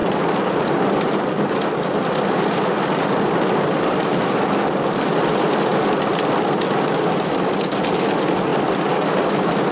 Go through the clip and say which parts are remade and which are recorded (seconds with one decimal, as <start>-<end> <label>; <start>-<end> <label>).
0.0-9.7 recorded